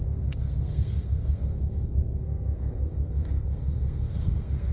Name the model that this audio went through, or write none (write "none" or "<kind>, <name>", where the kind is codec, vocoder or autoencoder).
codec, SNAC